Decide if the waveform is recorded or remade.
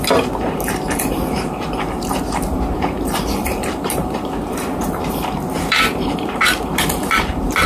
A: remade